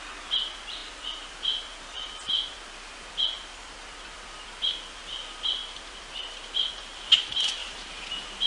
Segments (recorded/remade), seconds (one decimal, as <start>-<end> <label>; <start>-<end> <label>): 0.0-8.5 recorded